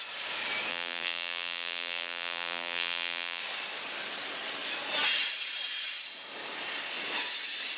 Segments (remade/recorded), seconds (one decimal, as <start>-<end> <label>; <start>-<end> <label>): 0.0-0.7 recorded; 0.7-3.4 remade; 3.4-7.8 recorded